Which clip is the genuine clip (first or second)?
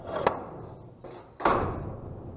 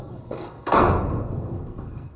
first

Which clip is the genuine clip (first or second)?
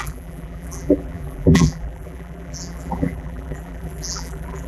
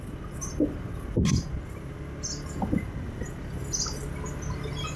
second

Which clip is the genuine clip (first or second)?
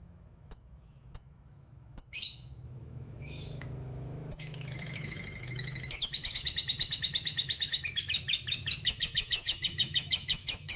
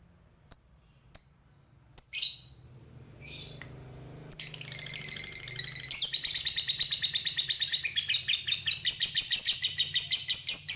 second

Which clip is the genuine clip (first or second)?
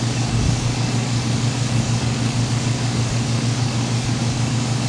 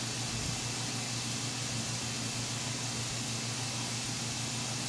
second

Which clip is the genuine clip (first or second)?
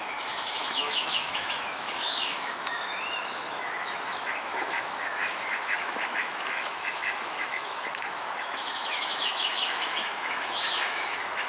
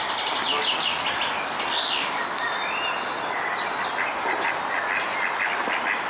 second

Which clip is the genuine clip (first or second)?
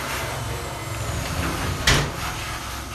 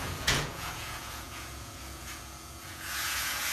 first